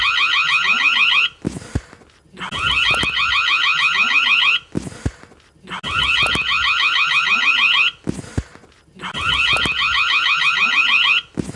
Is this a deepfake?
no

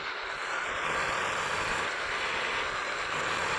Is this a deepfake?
yes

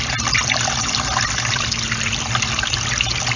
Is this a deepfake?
no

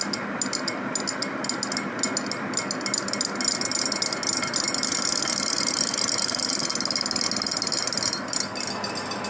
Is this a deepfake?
no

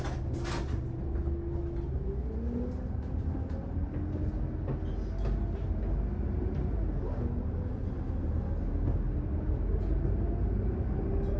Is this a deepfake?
no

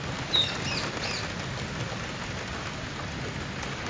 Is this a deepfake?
no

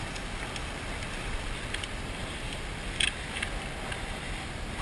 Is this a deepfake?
no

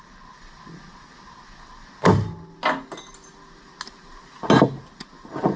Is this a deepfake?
no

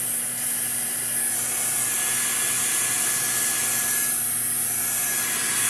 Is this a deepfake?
no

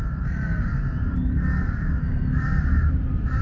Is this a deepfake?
no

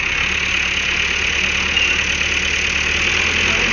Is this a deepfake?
no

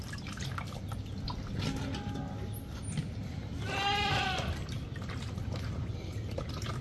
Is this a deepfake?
no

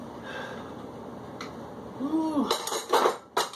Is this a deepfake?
no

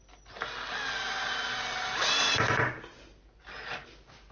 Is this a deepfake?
no